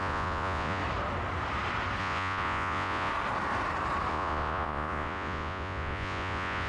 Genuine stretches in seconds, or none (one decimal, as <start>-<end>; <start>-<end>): 0.8-2.0; 3.1-4.1